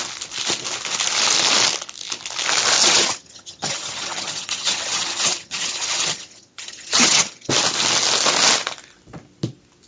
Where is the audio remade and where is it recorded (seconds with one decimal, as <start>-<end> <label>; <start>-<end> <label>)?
0.0-2.8 recorded; 2.8-7.5 remade; 7.5-9.9 recorded